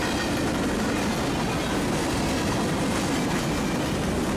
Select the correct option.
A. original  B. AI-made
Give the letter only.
A